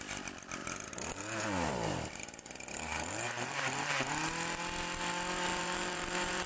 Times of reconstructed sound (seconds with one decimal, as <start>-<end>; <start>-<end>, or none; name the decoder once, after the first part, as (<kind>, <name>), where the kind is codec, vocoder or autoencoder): 0.6-4.1 (vocoder, BigVGAN v2); 5.5-6.5